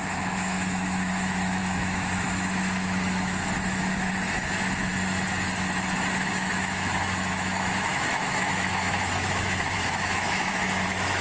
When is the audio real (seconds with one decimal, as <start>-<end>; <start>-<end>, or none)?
4.9-6.3

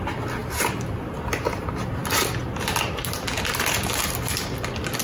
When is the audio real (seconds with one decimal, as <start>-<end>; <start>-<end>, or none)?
0.0-0.4; 1.2-5.0

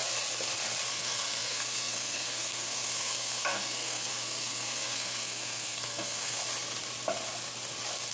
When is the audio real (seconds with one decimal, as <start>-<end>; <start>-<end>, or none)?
0.0-0.9; 6.4-8.1

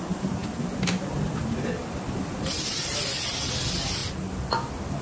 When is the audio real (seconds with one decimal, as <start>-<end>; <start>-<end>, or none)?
0.0-5.0

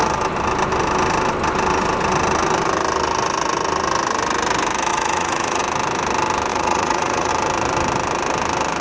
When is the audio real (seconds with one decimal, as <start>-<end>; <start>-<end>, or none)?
0.0-4.9; 5.6-6.5; 7.3-8.8

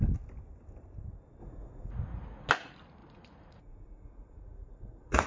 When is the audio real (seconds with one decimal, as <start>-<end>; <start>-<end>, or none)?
0.0-1.4; 2.5-3.0

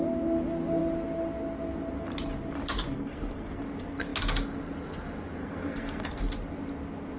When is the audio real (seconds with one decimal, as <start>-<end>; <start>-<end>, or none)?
0.0-2.9; 3.6-5.4; 6.2-7.2

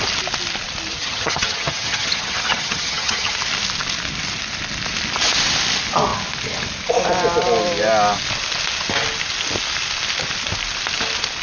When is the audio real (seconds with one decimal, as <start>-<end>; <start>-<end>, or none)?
0.0-0.9; 3.3-11.4